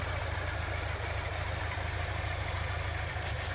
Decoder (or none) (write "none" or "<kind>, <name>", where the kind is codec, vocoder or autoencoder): none